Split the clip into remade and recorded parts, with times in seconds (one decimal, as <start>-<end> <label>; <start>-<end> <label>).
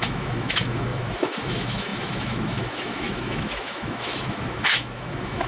0.0-5.5 remade